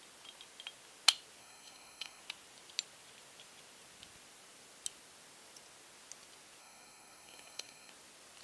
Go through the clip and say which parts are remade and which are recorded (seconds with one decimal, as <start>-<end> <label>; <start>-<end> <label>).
0.0-1.4 recorded; 1.4-2.2 remade; 2.2-6.6 recorded; 6.6-7.9 remade; 7.9-8.4 recorded